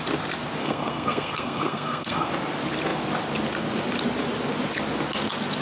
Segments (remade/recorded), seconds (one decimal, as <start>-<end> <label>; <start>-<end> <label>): 0.0-0.6 recorded; 0.6-2.3 remade; 2.3-5.6 recorded